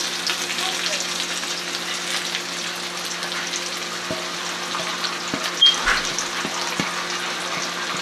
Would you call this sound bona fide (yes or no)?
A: yes